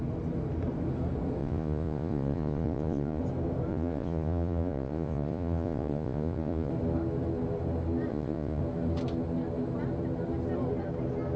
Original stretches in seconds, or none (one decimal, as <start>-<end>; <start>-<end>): 0.0-1.4; 3.2-3.7; 6.7-8.1; 8.6-11.4